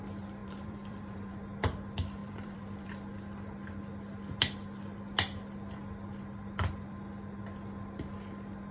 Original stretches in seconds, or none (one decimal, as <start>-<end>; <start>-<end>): 0.0-0.4; 1.3-2.2; 2.9-8.7